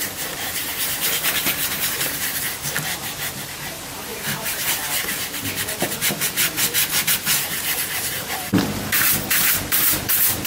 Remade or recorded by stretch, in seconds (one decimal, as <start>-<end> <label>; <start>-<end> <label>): 0.0-10.5 remade